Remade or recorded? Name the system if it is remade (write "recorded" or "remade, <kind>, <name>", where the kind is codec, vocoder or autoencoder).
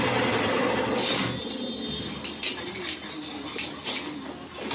recorded